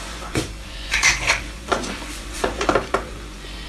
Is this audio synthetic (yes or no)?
yes